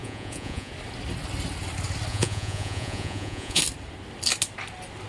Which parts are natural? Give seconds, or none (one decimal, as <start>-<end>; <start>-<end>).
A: 0.7-2.1; 3.6-5.1